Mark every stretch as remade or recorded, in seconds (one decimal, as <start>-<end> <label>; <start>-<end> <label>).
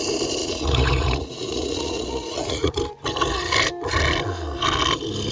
0.0-0.4 recorded; 0.4-2.7 remade; 2.7-5.3 recorded